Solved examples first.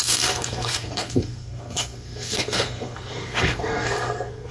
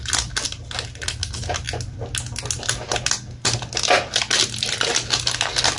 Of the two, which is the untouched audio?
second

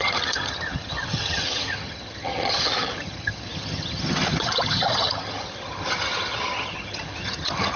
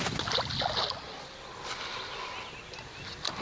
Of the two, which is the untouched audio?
second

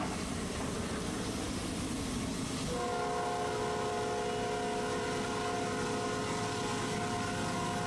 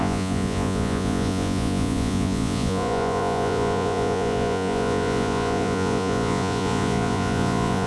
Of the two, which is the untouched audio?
first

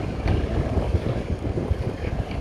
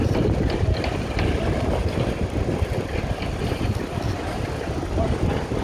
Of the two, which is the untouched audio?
second